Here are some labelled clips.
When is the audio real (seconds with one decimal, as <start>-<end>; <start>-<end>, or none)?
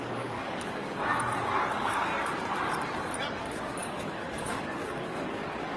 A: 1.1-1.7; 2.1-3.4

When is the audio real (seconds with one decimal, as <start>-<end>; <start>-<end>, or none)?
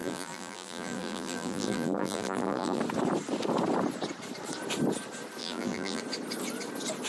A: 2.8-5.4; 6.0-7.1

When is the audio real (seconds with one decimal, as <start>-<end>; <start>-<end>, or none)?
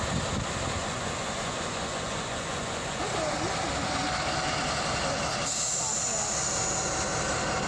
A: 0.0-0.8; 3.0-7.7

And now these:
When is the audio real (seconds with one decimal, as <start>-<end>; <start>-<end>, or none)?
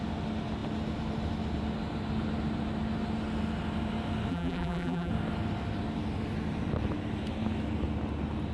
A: 0.0-4.3; 5.1-8.5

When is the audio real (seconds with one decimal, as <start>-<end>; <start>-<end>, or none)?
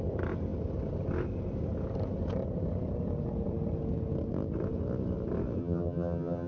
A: 0.0-5.6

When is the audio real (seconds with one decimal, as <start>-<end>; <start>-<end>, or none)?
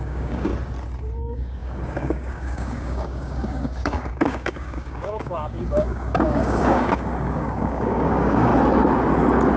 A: 0.5-1.2; 8.5-9.6